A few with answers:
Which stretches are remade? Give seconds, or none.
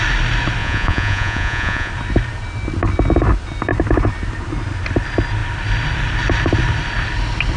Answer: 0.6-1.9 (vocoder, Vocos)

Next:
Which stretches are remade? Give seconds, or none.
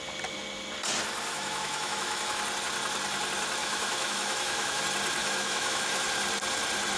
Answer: 1.3-2.4 (autoencoder, DAC-VAE); 3.6-4.8; 5.2-6.0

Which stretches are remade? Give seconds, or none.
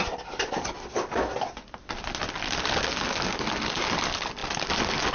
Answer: none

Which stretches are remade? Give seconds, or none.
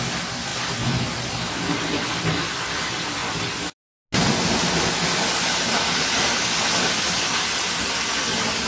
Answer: none